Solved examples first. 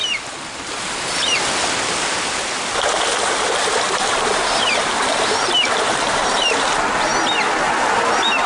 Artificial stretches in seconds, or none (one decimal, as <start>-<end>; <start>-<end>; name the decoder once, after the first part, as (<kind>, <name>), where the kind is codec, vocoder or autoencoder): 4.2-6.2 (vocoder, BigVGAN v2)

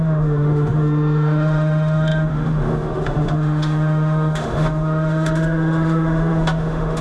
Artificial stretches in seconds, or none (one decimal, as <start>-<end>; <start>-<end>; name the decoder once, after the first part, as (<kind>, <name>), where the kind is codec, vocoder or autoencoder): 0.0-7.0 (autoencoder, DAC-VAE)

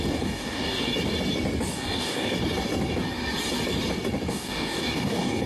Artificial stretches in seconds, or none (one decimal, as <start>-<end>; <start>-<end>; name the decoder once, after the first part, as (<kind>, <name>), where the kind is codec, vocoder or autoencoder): 0.0-0.9 (codec, DAC); 1.7-2.4; 4.3-5.5

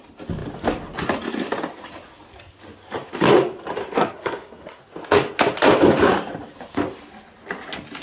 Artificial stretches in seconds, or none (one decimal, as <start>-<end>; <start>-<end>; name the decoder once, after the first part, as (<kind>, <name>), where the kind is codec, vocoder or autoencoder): 3.8-4.8 (codec, SNAC)